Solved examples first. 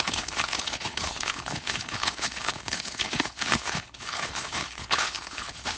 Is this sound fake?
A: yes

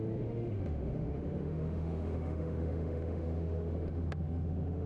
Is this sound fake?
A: yes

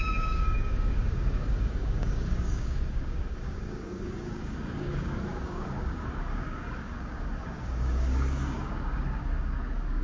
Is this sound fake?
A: yes